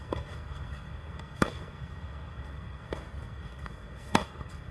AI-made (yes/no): yes